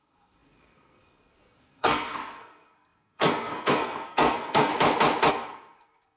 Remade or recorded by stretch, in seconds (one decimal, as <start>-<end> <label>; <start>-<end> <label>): 0.0-4.7 remade; 4.7-5.3 recorded; 5.3-6.2 remade